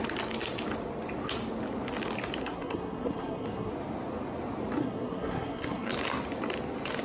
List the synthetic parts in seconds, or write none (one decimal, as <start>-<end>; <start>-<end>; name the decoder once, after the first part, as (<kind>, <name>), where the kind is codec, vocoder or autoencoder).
2.4-3.7 (codec, SNAC); 4.8-5.9